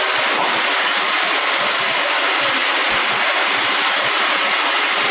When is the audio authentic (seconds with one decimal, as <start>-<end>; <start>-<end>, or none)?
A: 0.0-1.4; 2.1-5.1